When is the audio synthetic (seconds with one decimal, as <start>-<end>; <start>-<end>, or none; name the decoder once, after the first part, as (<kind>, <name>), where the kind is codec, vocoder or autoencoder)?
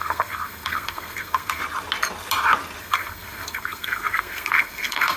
0.0-1.6 (codec, SNAC); 2.8-5.2